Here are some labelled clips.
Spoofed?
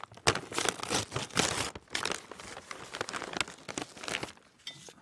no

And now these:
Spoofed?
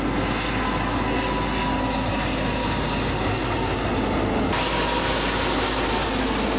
no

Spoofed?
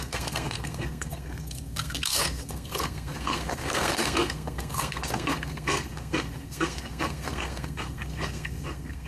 yes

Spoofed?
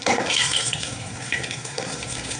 yes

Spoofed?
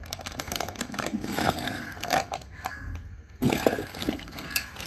yes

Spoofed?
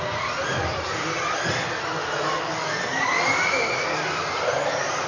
no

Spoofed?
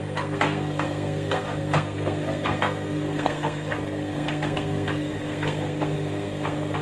yes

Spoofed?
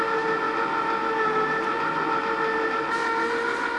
no